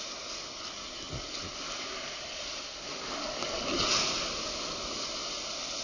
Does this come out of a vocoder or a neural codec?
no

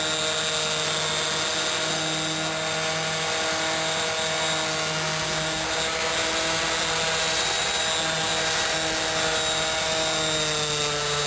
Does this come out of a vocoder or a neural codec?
no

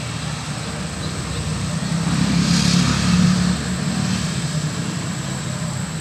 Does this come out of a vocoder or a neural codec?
no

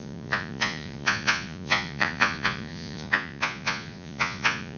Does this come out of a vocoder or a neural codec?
yes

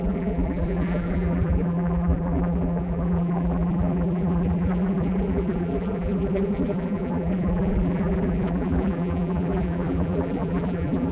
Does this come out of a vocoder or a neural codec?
yes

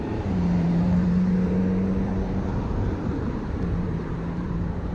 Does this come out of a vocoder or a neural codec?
yes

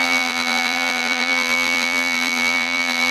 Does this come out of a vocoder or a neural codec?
yes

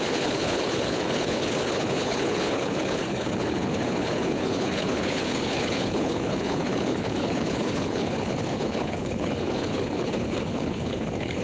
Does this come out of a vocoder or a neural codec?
yes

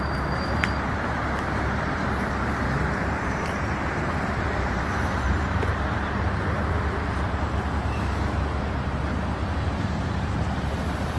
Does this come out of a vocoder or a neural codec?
yes